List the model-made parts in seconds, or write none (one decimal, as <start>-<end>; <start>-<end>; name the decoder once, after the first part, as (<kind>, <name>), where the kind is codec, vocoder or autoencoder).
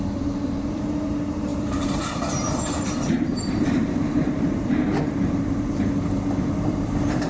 0.0-7.3 (vocoder, BigVGAN v2)